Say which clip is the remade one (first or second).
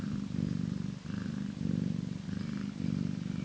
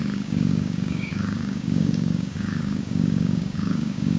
second